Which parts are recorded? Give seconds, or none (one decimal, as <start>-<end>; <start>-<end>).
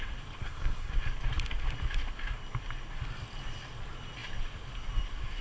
0.0-0.4; 0.9-5.4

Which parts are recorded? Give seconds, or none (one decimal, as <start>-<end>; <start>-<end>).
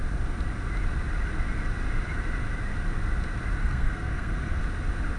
0.0-3.6; 4.6-5.2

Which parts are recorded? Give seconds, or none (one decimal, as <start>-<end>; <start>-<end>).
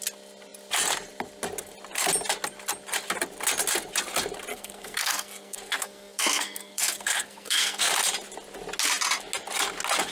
0.0-4.5; 7.9-10.1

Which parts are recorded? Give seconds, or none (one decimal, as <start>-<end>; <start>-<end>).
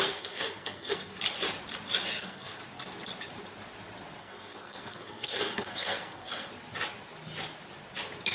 1.1-2.2; 2.6-4.2; 6.5-8.3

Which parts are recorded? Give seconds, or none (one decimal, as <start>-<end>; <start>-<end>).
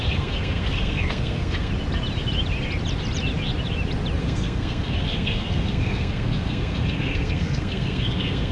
1.7-4.2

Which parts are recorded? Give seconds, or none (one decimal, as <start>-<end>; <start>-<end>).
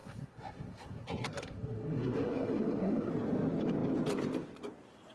3.1-5.1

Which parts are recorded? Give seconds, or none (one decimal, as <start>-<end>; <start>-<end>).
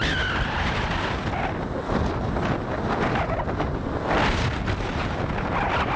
0.0-6.0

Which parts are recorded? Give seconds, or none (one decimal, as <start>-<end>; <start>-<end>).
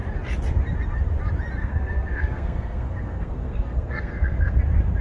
0.0-1.6; 4.6-5.0